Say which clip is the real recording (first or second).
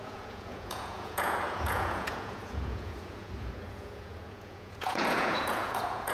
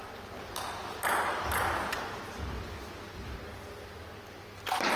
second